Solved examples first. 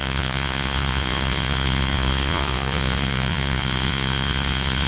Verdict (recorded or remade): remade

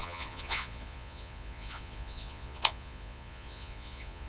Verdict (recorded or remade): remade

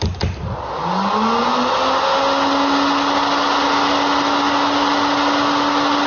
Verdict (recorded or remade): recorded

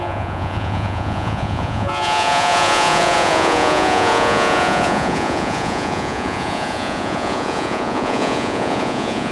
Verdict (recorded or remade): remade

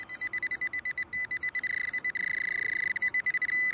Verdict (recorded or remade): recorded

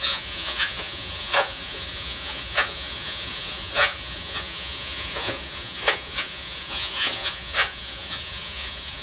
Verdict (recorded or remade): remade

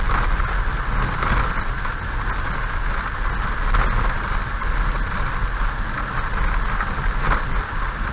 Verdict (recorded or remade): recorded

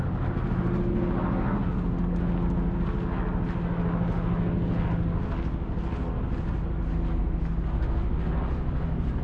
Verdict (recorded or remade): recorded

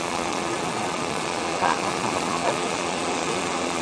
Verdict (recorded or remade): remade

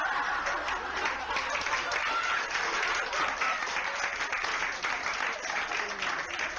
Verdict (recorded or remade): recorded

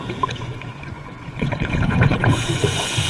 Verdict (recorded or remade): remade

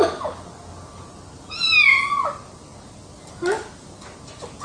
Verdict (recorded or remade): recorded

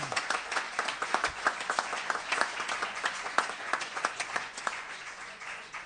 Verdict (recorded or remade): remade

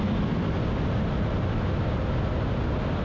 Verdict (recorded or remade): recorded